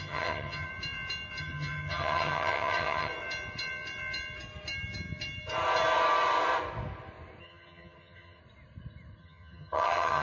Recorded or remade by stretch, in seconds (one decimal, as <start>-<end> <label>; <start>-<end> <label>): 0.0-0.7 remade; 0.7-1.4 recorded; 1.4-3.1 remade; 3.1-7.4 recorded; 7.4-8.4 remade; 8.4-9.2 recorded; 9.2-10.2 remade